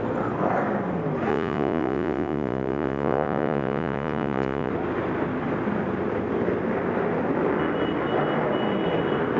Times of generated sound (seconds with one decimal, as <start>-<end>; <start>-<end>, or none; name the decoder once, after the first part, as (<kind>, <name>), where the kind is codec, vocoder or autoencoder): 1.3-4.7 (vocoder, Vocos)